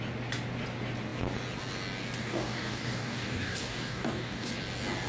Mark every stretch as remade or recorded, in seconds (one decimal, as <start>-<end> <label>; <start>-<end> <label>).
0.0-2.2 recorded; 2.2-4.5 remade; 4.5-5.1 recorded